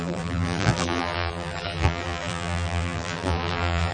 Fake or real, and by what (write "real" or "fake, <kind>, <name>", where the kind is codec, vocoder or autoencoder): fake, vocoder, BigVGAN v2